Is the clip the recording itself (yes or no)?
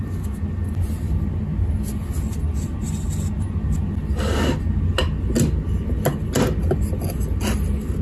yes